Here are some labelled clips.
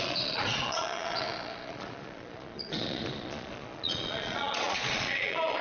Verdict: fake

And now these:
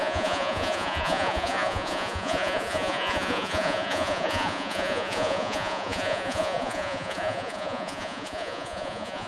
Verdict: fake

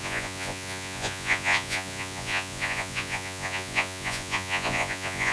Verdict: fake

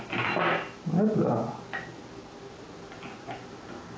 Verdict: real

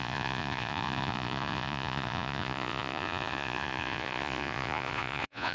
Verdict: fake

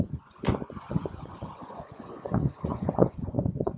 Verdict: fake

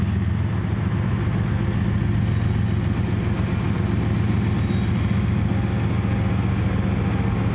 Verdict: real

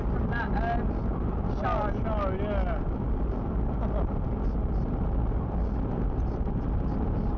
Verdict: real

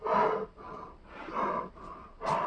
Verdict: real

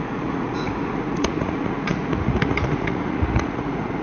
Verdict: fake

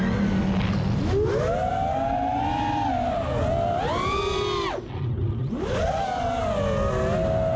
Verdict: real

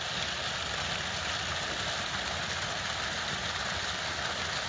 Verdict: real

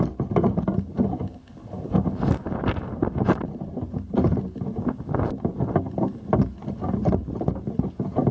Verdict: real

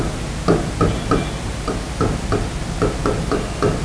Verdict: real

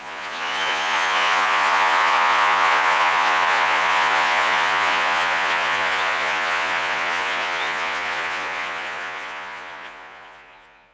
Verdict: fake